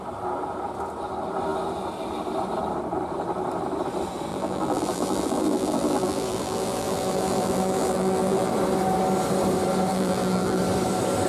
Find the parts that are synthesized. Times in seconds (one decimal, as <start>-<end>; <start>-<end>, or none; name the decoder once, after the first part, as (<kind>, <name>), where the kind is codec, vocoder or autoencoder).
4.3-8.5 (vocoder, BigVGAN v2); 9.9-10.6